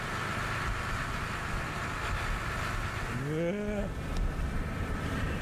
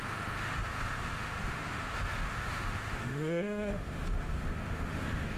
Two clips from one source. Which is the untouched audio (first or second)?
first